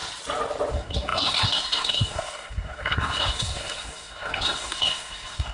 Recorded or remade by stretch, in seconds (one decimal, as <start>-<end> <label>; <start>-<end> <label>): 0.0-0.7 recorded; 0.7-5.5 remade